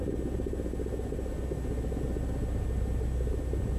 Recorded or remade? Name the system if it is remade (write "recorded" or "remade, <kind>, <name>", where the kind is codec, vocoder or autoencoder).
recorded